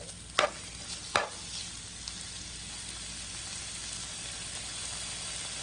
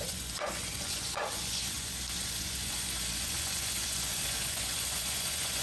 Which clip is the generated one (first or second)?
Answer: second